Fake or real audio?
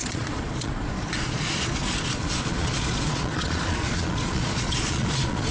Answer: fake